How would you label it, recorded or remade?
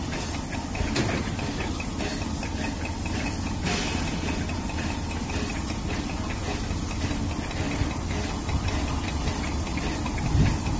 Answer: recorded